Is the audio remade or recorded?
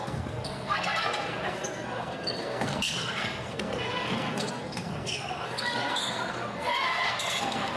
remade